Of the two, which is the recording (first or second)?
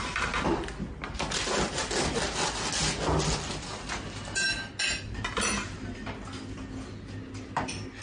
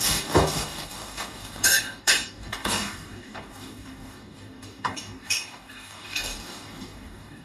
first